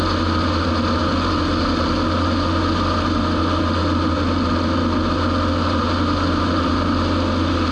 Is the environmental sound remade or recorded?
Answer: recorded